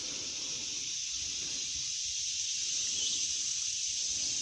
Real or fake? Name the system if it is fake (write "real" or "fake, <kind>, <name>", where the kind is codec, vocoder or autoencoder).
fake, vocoder, BigVGAN v2